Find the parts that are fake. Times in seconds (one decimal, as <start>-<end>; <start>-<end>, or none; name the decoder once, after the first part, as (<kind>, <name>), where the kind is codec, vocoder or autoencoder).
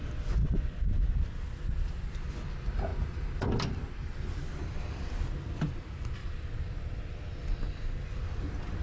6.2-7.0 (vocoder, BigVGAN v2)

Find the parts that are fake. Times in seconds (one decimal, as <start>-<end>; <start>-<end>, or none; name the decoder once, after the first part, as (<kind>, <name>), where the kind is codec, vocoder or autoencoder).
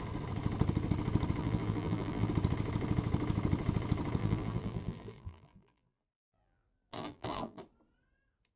1.4-2.3 (vocoder, BigVGAN v2); 4.2-7.6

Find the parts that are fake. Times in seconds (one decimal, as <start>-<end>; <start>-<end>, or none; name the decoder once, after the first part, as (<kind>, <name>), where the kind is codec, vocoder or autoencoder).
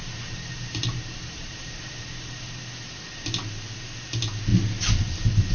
0.0-2.6 (vocoder, BigVGAN v2)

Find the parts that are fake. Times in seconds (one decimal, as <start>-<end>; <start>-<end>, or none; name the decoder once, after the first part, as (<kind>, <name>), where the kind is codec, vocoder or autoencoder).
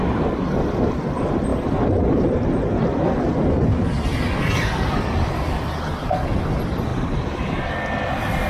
1.5-2.8 (vocoder, BigVGAN v2); 6.9-7.7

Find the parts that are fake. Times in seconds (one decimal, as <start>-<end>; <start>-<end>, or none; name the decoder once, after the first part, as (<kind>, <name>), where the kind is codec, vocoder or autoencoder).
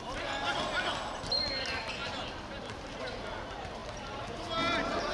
none